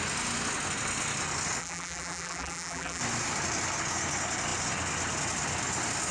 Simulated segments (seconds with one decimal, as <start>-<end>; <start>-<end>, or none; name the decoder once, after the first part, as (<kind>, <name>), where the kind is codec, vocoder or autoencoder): 1.6-3.0 (vocoder, BigVGAN v2)